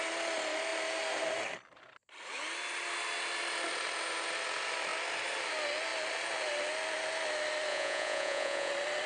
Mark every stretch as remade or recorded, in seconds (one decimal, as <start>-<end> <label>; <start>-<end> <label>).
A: 0.0-7.7 recorded; 7.7-8.7 remade; 8.7-9.1 recorded